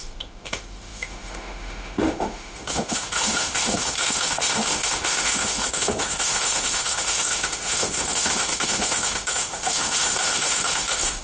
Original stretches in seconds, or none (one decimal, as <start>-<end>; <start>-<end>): none